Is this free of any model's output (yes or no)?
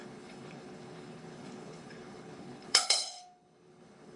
no